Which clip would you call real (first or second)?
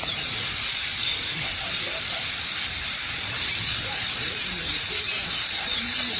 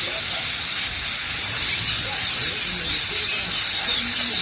second